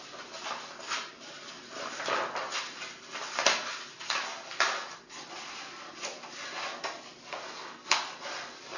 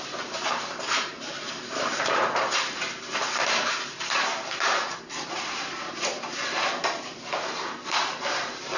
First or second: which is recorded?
first